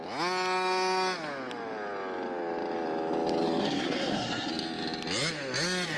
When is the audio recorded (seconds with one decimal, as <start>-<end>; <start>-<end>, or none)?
0.0-3.6; 4.5-6.0